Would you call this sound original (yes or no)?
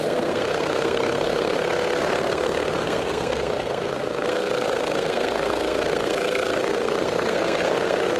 no